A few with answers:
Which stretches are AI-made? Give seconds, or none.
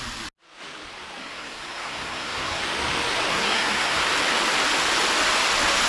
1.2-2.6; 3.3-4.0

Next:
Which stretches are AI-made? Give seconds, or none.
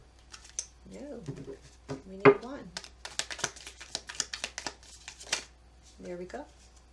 none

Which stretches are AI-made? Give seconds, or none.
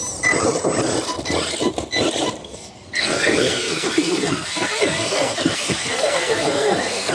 2.4-7.1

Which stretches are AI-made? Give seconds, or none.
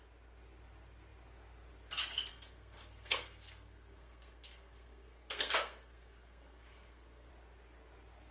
2.3-7.3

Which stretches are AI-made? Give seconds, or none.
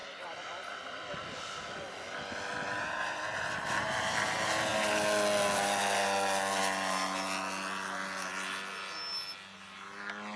none